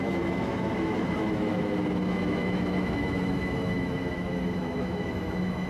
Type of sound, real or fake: fake